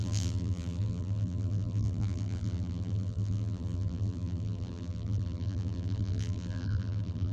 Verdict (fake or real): fake